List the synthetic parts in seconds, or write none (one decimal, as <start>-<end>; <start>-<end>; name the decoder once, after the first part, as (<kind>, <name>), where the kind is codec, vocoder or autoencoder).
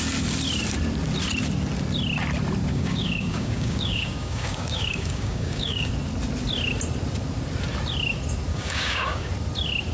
2.7-5.9 (codec, DAC); 8.5-9.3